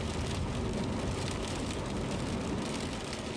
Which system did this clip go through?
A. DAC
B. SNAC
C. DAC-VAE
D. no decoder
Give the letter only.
D